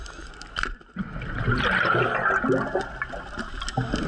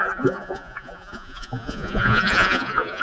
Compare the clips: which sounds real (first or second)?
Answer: first